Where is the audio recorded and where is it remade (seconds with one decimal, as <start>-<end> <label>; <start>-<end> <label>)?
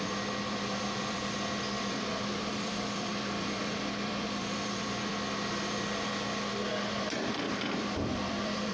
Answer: 0.0-5.1 remade; 5.1-6.9 recorded; 6.9-8.7 remade